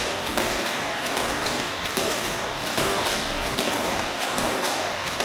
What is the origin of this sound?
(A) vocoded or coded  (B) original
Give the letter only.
A